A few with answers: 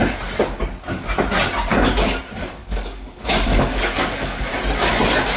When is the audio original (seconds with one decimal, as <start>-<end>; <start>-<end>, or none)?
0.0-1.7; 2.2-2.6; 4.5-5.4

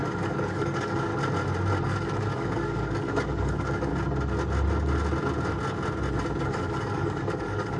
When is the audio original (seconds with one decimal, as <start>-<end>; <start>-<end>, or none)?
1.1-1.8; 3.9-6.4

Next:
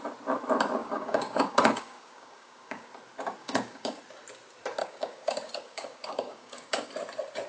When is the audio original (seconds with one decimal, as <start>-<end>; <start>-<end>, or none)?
0.0-0.8; 2.9-3.4; 4.0-4.8; 6.9-7.5

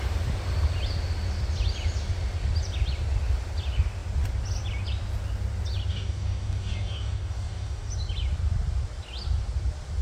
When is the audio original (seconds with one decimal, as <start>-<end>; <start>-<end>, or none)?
0.0-5.9; 7.9-10.0